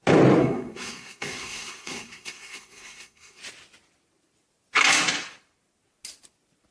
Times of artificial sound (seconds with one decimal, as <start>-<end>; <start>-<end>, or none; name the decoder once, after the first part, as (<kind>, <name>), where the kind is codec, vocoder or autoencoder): 0.4-3.4 (codec, SNAC)